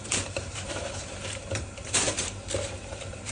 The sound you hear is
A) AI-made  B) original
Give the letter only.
A